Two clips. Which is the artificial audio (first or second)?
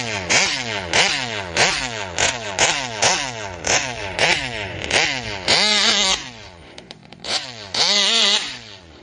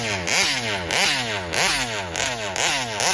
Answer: first